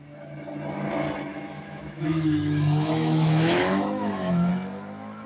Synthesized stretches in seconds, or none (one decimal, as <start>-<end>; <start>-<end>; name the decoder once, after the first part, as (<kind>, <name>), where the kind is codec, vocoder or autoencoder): 1.3-4.5 (autoencoder, DAC-VAE)